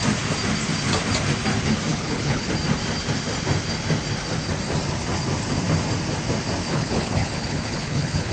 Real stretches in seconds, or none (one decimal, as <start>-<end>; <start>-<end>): 0.0-1.9; 2.5-6.6